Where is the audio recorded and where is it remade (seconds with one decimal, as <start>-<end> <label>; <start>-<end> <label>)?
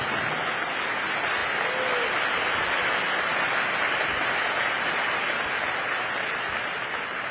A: 0.0-7.3 recorded